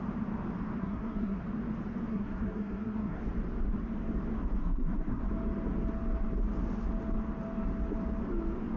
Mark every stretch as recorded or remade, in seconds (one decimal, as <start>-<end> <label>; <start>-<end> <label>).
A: 0.0-0.8 recorded; 0.8-1.4 remade; 1.4-2.1 recorded; 2.1-3.2 remade; 3.2-4.6 recorded; 4.6-5.2 remade; 5.2-8.8 recorded